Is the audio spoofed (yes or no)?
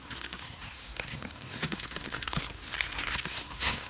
yes